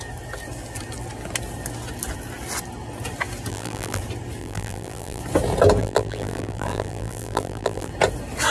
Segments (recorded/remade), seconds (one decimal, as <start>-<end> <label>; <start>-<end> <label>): 0.0-3.5 recorded; 3.5-4.0 remade; 4.0-4.4 recorded; 4.4-5.2 remade; 5.2-5.8 recorded; 5.8-7.9 remade; 7.9-8.5 recorded